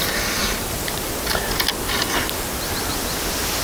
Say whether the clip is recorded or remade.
recorded